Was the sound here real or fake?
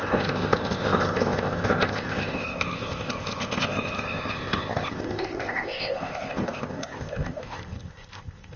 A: fake